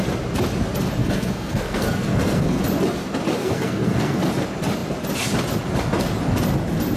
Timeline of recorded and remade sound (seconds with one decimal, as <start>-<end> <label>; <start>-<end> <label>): 0.0-1.0 recorded; 1.0-2.6 remade; 2.6-3.4 recorded; 3.4-4.2 remade; 4.2-7.0 recorded